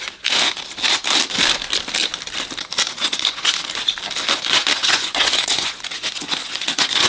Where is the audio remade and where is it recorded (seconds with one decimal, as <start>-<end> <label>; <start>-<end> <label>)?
0.0-3.0 recorded; 3.0-3.5 remade; 3.5-4.8 recorded; 4.8-7.1 remade